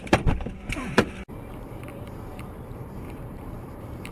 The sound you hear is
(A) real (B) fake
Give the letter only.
B